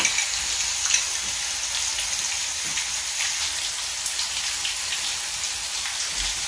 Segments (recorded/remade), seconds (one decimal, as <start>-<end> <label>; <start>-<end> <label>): 0.0-6.5 recorded